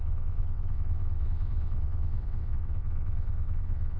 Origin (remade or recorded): remade